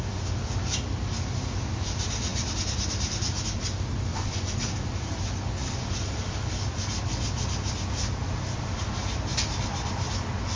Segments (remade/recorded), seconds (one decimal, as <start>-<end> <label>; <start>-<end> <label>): 0.0-4.1 recorded; 4.1-4.6 remade; 4.6-10.6 recorded